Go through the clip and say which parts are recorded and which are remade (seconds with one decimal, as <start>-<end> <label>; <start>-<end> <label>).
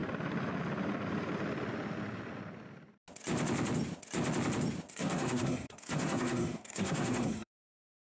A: 0.0-4.9 recorded; 4.9-8.1 remade